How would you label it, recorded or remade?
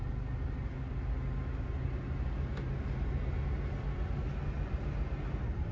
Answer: recorded